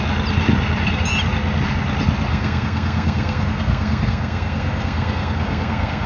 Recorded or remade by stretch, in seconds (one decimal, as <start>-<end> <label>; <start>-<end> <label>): 0.0-2.3 recorded; 2.3-6.1 remade